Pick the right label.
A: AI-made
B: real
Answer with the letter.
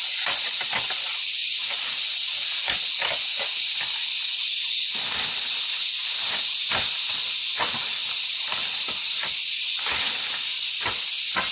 B